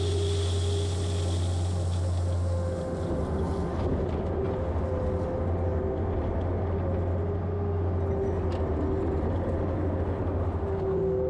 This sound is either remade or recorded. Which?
recorded